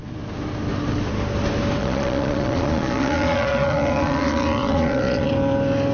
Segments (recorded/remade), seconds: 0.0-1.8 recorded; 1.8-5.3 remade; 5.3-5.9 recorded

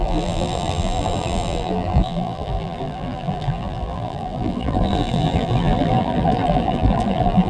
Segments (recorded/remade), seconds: 0.0-7.5 remade

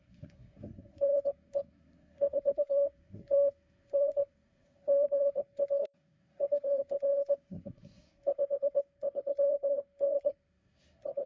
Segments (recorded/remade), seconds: 0.0-11.3 remade

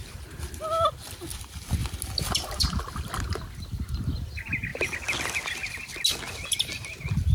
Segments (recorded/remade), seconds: 0.0-7.3 recorded